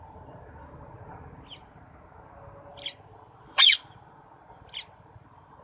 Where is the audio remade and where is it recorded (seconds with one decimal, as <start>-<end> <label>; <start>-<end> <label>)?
0.0-2.7 recorded; 2.7-5.6 remade